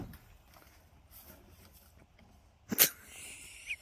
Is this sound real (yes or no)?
yes